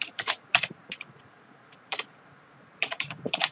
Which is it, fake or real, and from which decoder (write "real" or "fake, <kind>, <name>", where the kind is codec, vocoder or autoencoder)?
fake, vocoder, Vocos